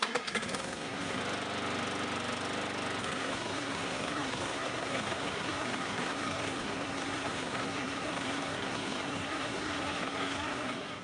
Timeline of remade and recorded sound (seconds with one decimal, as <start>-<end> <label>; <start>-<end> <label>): 0.0-1.2 remade; 1.2-3.0 recorded; 3.0-11.0 remade